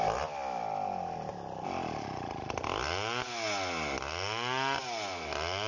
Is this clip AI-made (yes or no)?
no